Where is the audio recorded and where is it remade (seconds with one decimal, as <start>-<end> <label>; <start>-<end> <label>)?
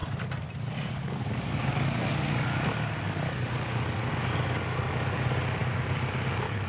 0.0-0.9 recorded; 0.9-4.0 remade; 4.0-4.9 recorded; 4.9-6.7 remade